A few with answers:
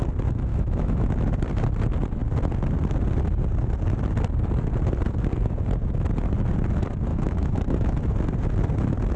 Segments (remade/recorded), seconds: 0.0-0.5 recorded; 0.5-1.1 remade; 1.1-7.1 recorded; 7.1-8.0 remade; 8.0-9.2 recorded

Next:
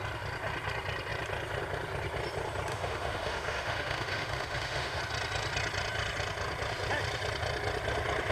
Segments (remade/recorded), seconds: 0.0-2.7 recorded; 2.7-5.0 remade; 5.0-8.3 recorded

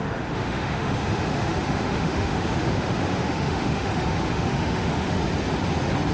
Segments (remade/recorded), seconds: 0.0-5.2 remade; 5.2-6.1 recorded